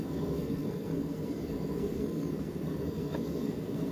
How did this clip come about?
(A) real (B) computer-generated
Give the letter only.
B